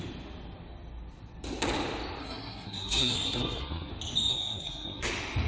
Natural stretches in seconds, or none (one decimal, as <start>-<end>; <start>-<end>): 0.0-2.2; 3.9-4.3; 5.1-5.5